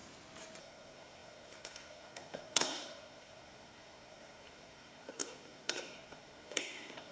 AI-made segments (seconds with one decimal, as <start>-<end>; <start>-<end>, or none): 0.6-7.1